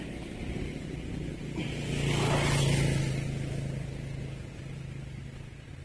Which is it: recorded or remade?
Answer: recorded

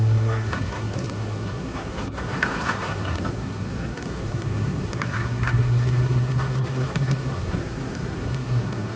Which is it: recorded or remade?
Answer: remade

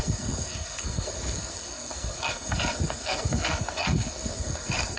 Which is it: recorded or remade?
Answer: remade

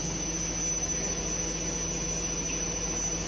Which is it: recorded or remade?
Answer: recorded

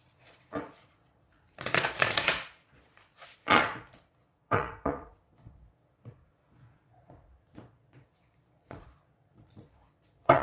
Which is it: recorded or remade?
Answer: remade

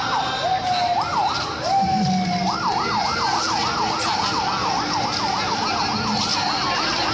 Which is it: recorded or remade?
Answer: recorded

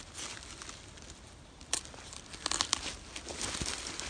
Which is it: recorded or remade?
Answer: recorded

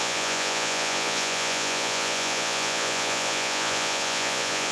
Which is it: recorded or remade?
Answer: remade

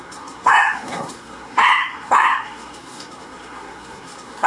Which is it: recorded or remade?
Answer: remade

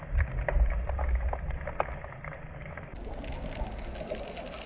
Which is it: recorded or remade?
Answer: recorded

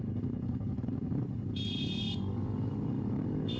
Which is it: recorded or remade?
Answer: remade